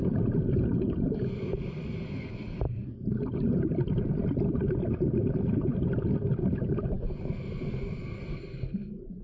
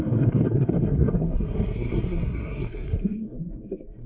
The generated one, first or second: second